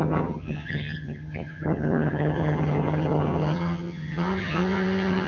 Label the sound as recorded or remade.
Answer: remade